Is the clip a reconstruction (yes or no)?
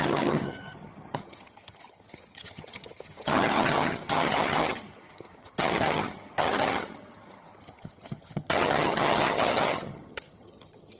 yes